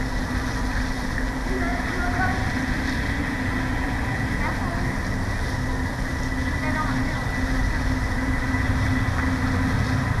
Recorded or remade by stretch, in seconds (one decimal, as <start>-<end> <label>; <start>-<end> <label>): 0.0-10.2 recorded